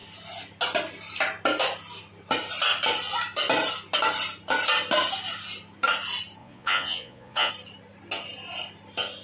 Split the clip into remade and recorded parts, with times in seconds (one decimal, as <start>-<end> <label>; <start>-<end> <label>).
0.0-6.4 recorded; 6.4-7.5 remade; 7.5-9.2 recorded